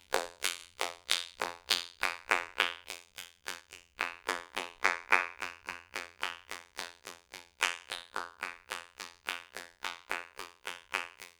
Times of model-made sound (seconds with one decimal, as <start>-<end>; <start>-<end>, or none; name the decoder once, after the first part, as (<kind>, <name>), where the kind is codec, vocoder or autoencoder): 0.0-11.4 (vocoder, BigVGAN v2)